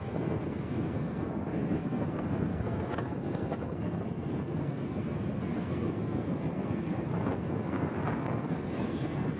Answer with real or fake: fake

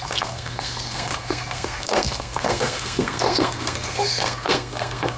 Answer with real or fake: fake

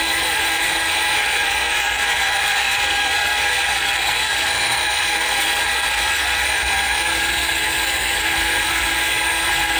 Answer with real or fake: fake